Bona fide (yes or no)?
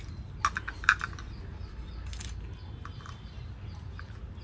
yes